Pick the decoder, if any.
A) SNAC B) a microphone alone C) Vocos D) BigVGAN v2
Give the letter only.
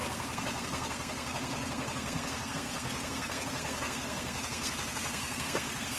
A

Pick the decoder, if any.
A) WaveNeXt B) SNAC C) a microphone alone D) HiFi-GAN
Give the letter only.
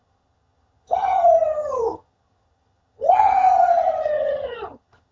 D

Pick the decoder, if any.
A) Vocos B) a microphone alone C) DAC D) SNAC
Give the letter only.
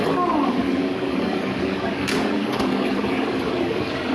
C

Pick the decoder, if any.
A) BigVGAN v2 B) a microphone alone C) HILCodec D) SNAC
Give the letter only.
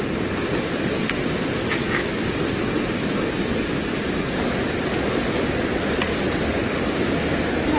B